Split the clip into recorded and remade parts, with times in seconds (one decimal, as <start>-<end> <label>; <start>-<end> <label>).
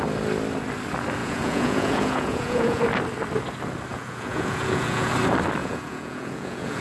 0.0-1.2 recorded; 1.2-2.8 remade; 2.8-3.9 recorded; 3.9-5.1 remade; 5.1-5.6 recorded; 5.6-6.8 remade